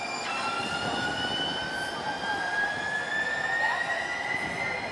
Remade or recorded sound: recorded